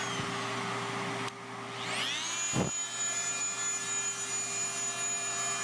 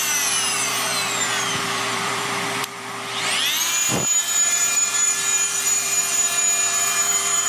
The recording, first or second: first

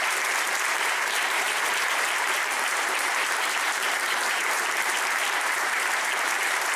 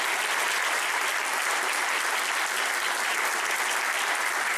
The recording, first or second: second